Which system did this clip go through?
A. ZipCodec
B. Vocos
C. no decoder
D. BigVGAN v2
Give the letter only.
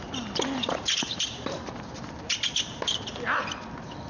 C